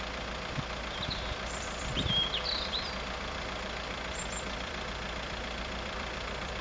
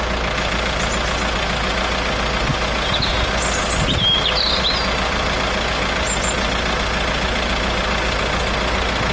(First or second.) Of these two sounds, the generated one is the first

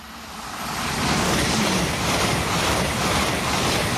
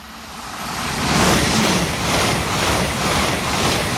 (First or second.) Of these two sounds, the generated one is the second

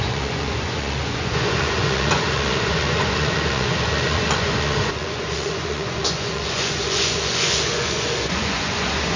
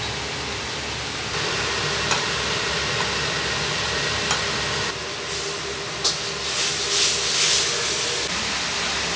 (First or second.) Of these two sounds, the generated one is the first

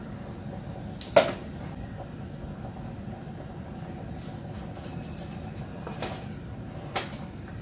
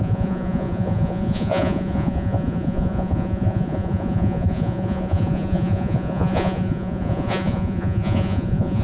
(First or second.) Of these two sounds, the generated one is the second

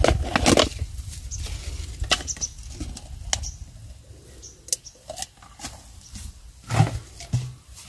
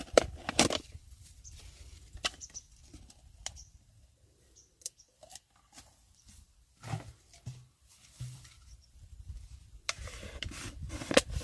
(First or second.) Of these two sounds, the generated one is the second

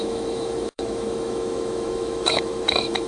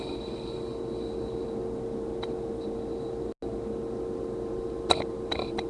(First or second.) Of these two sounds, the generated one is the first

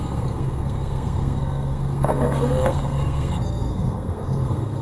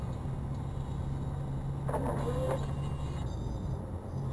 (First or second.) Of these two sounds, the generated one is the first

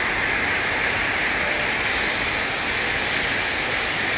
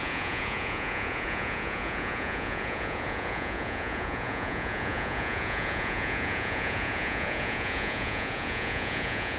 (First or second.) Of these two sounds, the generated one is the second